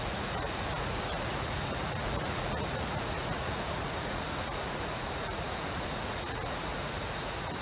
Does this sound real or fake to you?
fake